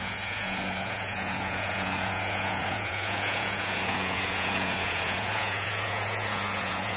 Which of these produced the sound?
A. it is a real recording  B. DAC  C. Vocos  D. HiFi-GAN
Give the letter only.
C